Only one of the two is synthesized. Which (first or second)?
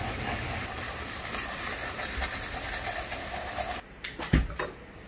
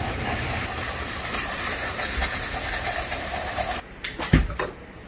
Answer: second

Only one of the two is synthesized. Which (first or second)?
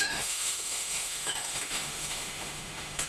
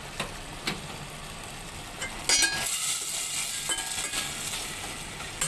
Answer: first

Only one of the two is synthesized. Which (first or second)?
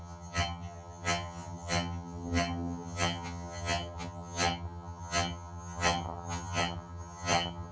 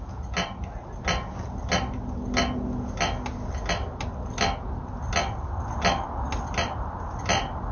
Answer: first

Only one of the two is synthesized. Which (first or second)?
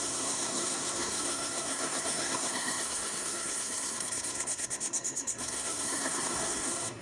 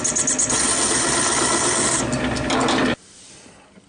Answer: first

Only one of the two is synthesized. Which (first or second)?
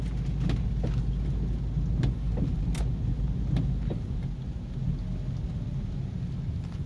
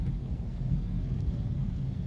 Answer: second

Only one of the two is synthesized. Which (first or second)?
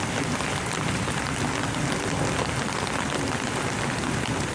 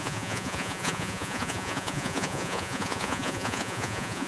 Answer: second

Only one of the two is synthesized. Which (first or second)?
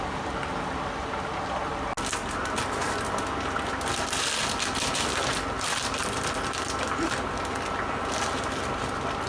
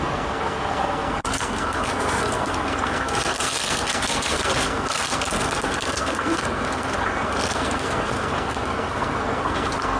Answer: second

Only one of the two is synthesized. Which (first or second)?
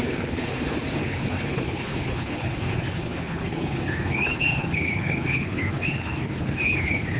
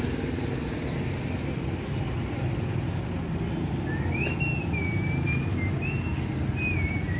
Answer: first